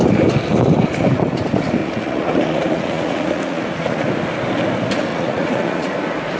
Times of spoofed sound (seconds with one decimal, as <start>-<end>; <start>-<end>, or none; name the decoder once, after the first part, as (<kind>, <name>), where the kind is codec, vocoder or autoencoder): 1.8-4.0 (vocoder, Vocos); 5.1-5.9